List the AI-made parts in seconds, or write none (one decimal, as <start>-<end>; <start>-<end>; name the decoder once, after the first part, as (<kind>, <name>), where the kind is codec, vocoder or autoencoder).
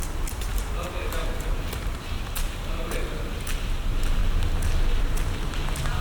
0.5-2.0 (vocoder, BigVGAN v2)